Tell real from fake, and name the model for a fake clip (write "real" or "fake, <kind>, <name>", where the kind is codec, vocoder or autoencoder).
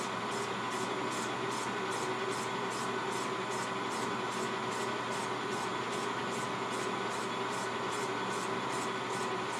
real